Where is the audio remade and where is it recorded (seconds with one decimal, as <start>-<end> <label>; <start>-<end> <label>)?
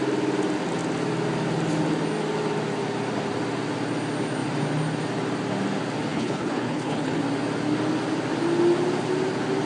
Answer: 0.0-6.1 recorded; 6.1-7.2 remade; 7.2-9.7 recorded